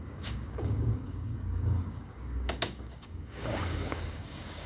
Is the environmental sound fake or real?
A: fake